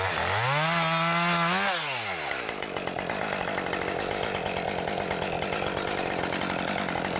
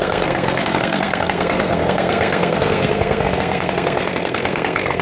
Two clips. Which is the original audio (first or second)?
first